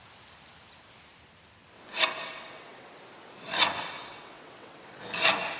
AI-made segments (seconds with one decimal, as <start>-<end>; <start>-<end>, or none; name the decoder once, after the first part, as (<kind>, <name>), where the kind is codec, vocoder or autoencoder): 2.2-2.9 (vocoder, WaveNeXt); 4.1-5.0